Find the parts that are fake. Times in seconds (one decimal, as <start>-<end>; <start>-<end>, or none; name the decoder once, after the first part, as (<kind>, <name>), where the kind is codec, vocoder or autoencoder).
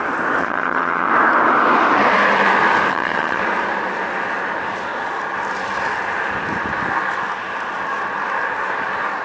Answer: 0.4-1.1 (vocoder, HiFi-GAN); 2.9-3.4